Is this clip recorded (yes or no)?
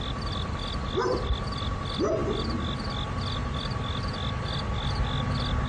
yes